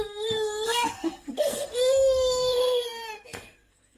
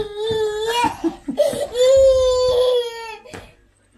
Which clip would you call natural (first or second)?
second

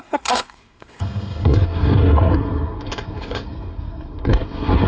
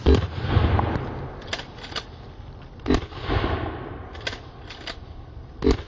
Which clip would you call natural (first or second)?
second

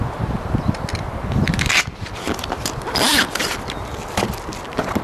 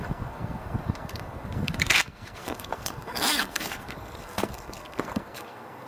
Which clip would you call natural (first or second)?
first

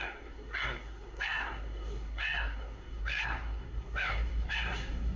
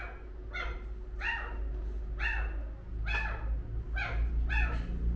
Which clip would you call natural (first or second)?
second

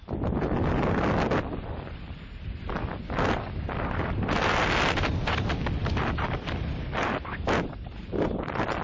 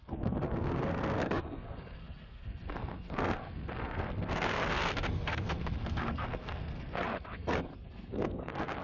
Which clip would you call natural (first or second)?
first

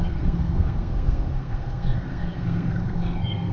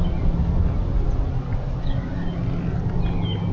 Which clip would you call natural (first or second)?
second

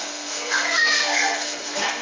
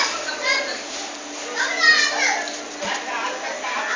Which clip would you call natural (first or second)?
second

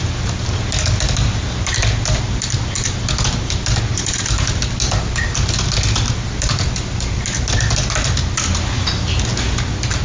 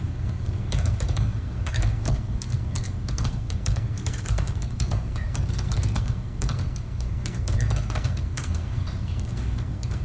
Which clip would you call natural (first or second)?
first